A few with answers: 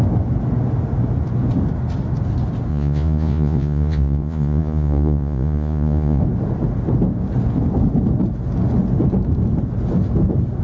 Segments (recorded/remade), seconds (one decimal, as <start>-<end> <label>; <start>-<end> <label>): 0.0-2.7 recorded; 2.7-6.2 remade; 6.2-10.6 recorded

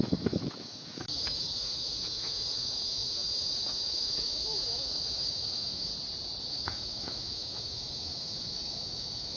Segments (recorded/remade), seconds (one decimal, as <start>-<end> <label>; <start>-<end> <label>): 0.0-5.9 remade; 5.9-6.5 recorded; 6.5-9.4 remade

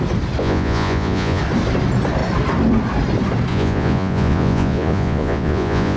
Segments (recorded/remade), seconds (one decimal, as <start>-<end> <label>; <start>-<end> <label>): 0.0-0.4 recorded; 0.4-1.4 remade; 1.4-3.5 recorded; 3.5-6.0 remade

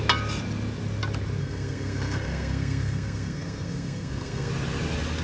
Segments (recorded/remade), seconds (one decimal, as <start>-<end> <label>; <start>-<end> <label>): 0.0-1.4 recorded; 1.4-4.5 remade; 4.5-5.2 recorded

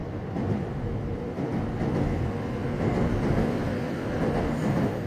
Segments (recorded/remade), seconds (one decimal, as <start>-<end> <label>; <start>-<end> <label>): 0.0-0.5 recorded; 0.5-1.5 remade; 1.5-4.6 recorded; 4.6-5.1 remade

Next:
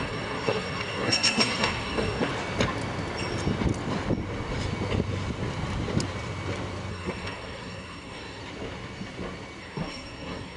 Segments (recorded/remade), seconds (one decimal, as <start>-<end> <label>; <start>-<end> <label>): 0.0-2.3 remade; 2.3-6.9 recorded; 6.9-8.4 remade; 8.4-9.6 recorded; 9.6-10.6 remade